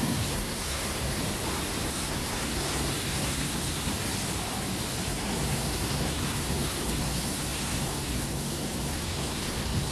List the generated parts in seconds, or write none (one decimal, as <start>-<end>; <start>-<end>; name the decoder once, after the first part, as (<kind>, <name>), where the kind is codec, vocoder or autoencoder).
0.0-1.2 (codec, SNAC); 1.9-3.9; 5.1-9.9